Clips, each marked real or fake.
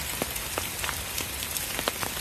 real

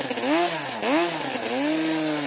real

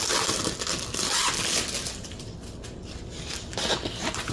real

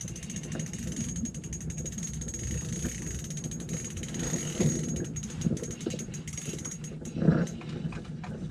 real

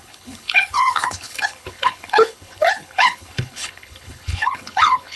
fake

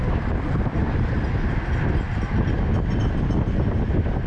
real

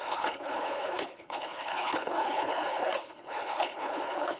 fake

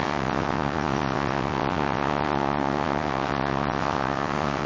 fake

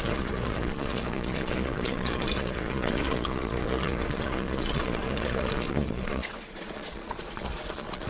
fake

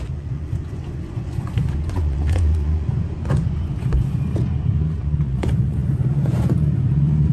fake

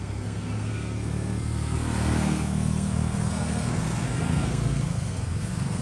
fake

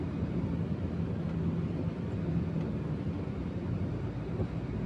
real